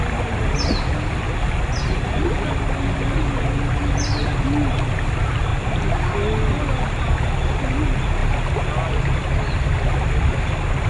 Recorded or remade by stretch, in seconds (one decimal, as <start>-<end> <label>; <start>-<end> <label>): 0.0-10.9 recorded